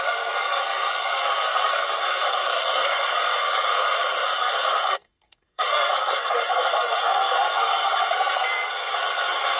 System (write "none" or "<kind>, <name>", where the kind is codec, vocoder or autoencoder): codec, SNAC